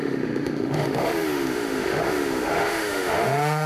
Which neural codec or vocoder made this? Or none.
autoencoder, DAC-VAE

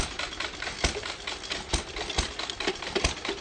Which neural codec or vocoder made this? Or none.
none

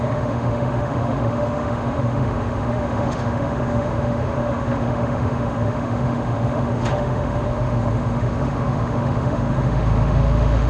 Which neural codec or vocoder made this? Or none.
autoencoder, DAC-VAE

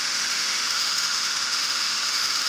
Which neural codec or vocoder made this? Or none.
autoencoder, DAC-VAE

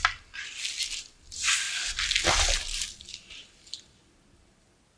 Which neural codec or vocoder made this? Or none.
none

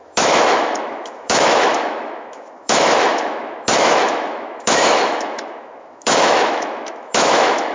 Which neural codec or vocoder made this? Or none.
autoencoder, DAC-VAE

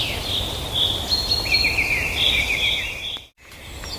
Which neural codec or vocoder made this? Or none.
none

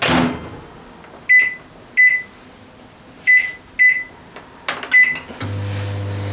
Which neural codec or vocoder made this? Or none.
none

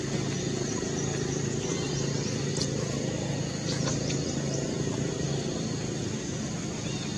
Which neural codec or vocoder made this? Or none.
none